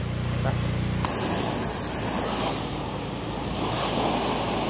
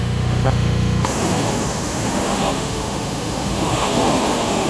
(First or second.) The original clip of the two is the first